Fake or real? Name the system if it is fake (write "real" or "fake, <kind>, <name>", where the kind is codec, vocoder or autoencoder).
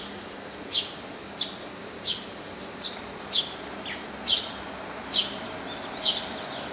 real